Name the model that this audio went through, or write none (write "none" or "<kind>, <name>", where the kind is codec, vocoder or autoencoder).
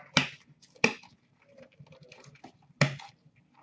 none